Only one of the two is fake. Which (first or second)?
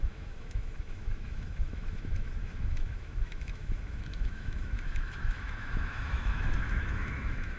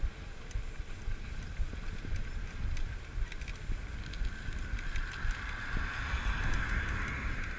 first